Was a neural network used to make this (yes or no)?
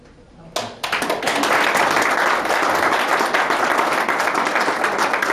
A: no